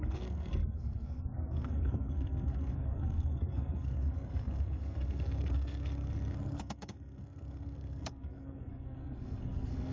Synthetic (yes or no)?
yes